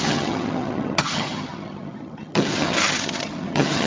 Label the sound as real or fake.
fake